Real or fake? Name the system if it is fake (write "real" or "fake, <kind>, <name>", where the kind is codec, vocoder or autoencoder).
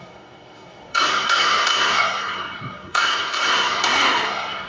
fake, codec, SNAC